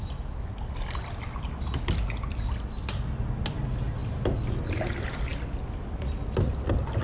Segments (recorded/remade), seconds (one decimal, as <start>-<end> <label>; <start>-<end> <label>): 0.0-7.0 recorded

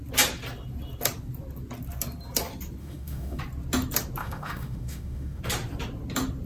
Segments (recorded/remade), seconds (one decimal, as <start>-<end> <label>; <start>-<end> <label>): 0.0-2.8 recorded; 2.8-3.4 remade; 3.4-4.2 recorded; 4.2-5.4 remade; 5.4-6.5 recorded